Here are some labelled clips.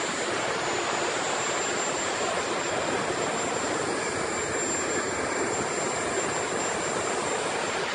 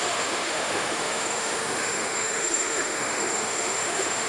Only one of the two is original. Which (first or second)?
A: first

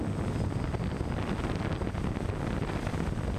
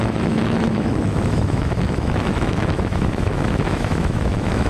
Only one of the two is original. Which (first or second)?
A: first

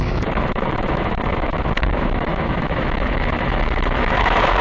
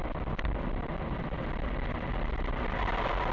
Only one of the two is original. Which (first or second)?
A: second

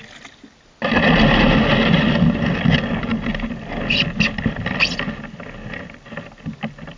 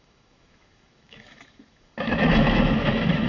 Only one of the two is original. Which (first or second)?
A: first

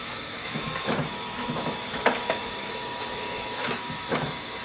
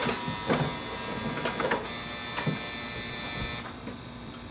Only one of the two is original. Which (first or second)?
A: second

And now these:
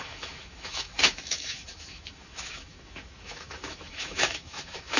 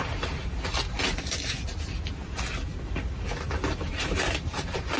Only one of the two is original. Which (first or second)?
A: second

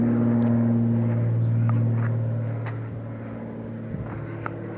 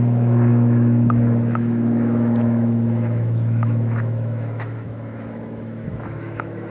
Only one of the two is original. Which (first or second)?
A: first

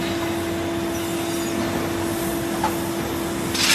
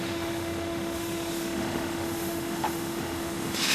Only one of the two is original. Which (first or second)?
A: first